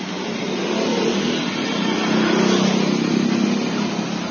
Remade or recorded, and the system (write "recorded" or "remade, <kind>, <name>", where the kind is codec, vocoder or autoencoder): recorded